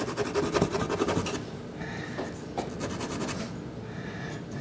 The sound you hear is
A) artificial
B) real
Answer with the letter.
B